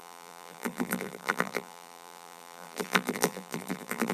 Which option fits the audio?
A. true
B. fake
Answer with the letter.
B